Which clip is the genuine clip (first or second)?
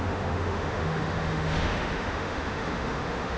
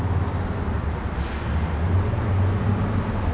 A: second